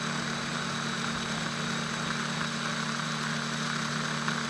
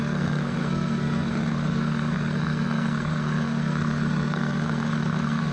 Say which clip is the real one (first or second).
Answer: first